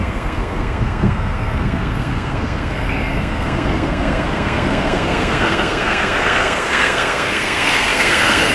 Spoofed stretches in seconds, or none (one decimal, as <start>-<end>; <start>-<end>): 0.0-8.5

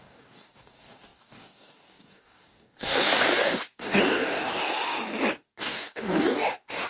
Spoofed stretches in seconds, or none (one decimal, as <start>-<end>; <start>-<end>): 0.0-4.6; 5.3-6.9

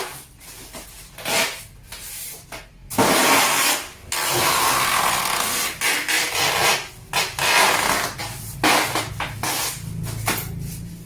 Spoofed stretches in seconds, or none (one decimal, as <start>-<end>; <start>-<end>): 2.8-4.7